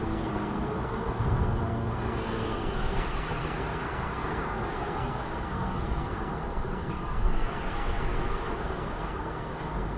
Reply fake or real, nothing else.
fake